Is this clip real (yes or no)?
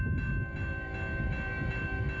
yes